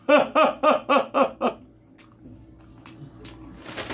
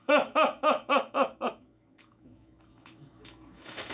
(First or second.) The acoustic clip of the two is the first